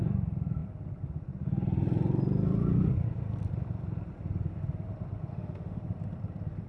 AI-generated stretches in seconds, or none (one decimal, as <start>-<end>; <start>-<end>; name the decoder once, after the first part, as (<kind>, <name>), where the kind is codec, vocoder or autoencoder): 5.3-5.8 (autoencoder, DAC-VAE)